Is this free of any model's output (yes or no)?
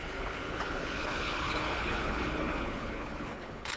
no